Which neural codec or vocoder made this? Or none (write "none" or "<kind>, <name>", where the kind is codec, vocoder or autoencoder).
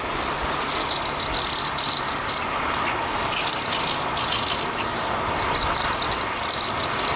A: none